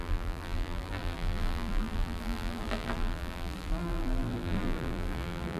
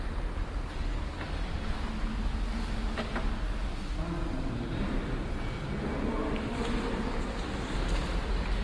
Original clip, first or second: second